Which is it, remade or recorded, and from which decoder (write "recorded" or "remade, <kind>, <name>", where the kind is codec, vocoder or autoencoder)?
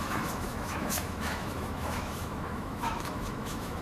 remade, autoencoder, DAC-VAE